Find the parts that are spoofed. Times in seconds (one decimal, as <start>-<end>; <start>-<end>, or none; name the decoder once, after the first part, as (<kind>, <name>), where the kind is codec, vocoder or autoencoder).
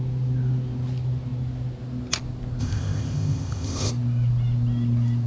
2.6-3.9 (codec, ZipCodec)